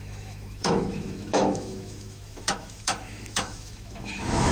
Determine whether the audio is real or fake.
fake